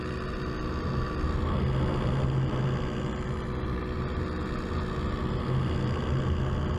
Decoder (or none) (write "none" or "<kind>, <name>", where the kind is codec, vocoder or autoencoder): none